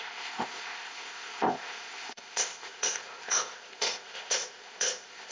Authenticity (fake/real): fake